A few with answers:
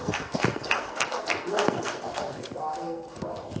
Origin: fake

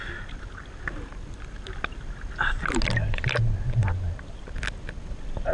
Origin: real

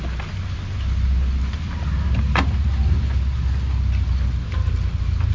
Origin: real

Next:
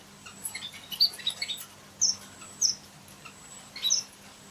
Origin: real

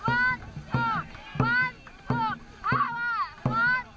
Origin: real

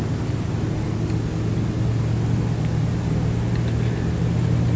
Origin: real